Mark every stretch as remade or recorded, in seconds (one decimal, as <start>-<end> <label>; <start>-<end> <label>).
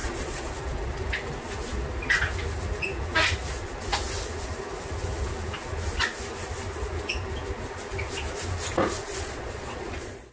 0.0-0.5 remade; 0.5-9.0 recorded; 9.0-10.3 remade